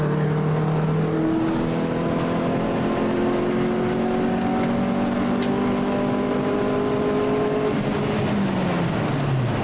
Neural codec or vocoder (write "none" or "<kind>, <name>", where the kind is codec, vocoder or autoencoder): none